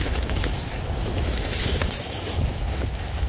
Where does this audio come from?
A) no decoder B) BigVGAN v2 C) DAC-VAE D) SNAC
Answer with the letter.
C